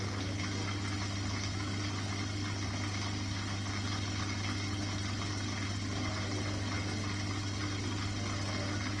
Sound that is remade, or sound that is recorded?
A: recorded